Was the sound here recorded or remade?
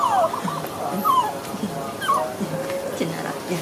recorded